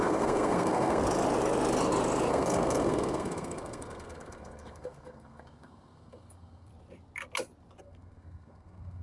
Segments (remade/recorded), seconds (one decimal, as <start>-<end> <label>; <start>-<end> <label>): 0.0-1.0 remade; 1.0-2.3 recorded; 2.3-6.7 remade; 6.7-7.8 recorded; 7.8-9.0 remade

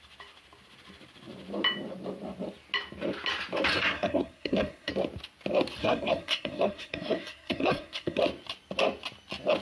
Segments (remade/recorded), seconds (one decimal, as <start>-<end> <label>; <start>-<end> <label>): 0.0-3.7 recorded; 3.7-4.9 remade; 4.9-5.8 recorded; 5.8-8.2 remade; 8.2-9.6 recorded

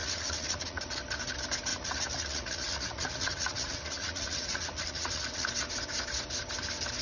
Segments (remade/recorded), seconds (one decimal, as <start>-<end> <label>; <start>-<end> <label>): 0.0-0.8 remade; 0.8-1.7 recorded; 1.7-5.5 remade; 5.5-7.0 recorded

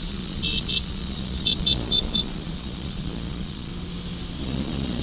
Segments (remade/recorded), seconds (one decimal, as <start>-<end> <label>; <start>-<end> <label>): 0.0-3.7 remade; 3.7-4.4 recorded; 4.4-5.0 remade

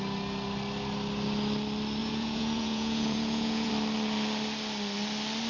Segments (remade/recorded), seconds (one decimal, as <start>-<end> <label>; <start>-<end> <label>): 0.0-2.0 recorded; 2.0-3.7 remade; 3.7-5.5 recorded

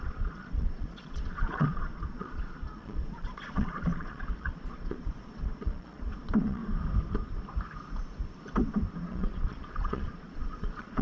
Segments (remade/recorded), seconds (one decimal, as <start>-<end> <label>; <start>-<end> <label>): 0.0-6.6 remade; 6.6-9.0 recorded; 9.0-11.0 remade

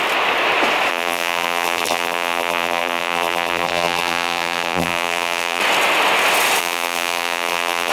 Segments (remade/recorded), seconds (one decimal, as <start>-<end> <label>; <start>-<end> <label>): 0.0-0.9 recorded; 0.9-5.6 remade; 5.6-6.6 recorded; 6.6-7.9 remade